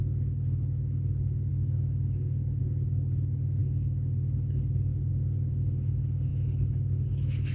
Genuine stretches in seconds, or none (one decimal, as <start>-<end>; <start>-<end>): none